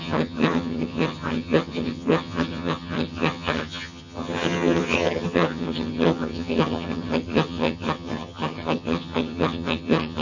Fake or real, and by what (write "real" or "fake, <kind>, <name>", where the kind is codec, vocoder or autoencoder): fake, vocoder, HiFi-GAN